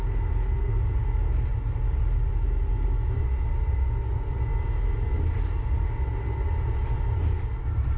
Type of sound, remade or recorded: recorded